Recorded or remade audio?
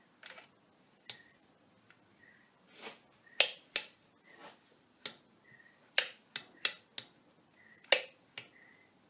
recorded